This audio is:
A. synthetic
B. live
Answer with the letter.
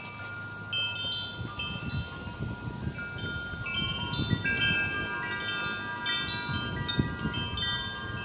B